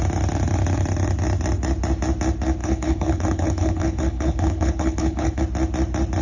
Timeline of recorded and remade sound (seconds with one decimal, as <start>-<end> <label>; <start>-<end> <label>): 0.0-2.6 recorded; 2.6-5.4 remade; 5.4-6.2 recorded

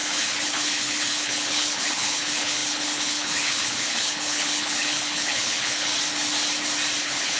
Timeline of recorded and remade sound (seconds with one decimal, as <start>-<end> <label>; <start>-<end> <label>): 0.0-5.9 remade; 5.9-7.0 recorded; 7.0-7.4 remade